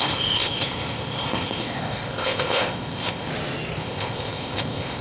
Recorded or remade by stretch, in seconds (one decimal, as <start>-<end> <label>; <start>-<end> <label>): 0.0-3.3 remade; 3.3-3.8 recorded; 3.8-5.0 remade